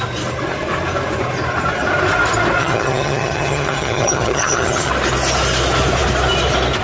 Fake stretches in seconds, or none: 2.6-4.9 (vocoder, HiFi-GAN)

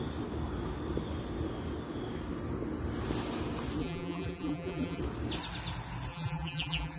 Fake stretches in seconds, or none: 3.8-5.0 (vocoder, BigVGAN v2); 6.1-7.0

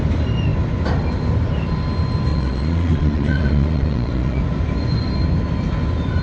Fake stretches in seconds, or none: 2.3-4.4 (vocoder, Vocos)

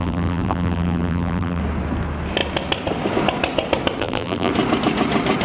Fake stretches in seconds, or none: 0.0-1.6 (vocoder, BigVGAN v2); 4.0-4.5